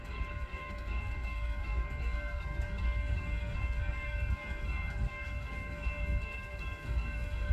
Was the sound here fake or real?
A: fake